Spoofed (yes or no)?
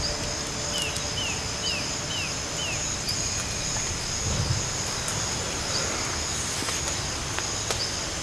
no